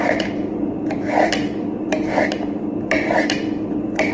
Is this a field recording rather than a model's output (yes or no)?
no